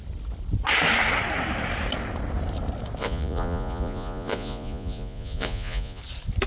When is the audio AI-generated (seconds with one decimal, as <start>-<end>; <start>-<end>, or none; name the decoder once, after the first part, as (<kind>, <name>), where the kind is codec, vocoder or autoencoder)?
3.0-6.0 (vocoder, Vocos)